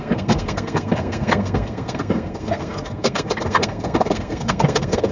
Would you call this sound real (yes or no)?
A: no